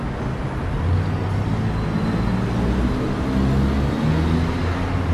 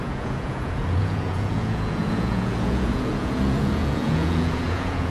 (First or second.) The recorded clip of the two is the first